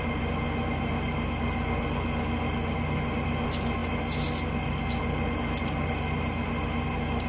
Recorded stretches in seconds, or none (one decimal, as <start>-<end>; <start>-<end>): 0.0-7.3